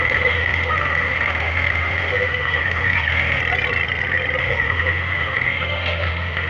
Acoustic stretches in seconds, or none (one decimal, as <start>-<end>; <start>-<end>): 3.4-4.4